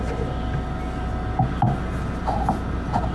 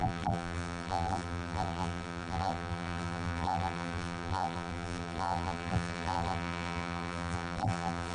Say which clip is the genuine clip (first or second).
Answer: first